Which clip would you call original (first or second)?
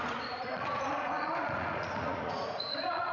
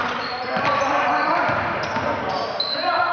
second